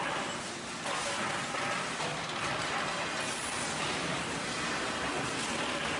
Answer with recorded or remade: recorded